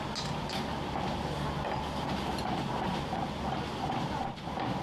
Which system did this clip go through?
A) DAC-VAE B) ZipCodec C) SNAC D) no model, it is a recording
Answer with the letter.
D